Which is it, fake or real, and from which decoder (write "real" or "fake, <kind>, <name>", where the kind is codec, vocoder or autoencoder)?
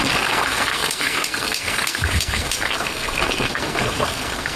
fake, codec, SNAC